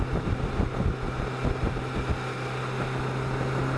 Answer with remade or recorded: recorded